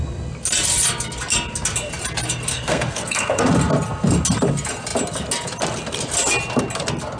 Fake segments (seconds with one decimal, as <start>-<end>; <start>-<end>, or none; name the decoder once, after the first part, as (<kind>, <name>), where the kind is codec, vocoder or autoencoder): 2.5-3.5 (codec, SNAC)

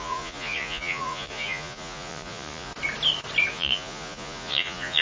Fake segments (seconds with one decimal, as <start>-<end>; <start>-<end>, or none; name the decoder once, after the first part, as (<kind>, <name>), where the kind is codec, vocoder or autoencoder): 0.0-2.7 (vocoder, Vocos); 3.5-5.0